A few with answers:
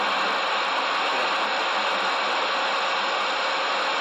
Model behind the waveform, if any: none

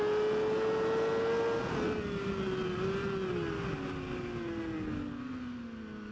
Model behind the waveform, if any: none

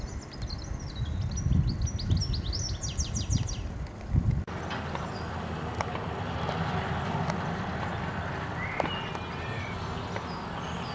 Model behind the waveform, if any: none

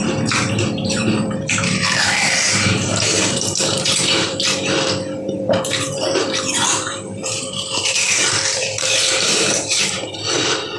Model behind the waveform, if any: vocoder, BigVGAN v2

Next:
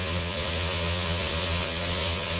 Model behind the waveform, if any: vocoder, Vocos